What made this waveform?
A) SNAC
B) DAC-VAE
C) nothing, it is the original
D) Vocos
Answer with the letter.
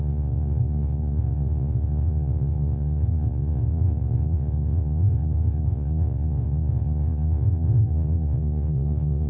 D